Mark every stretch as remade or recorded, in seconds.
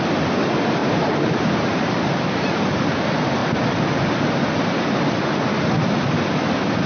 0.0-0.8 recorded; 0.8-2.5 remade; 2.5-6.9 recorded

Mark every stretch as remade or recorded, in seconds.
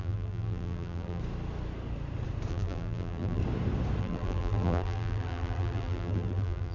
0.0-1.2 remade; 1.2-2.5 recorded; 2.5-3.4 remade; 3.4-4.0 recorded; 4.0-6.7 remade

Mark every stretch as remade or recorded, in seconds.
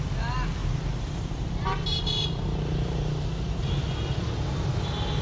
0.0-0.6 recorded; 0.6-3.7 remade; 3.7-5.2 recorded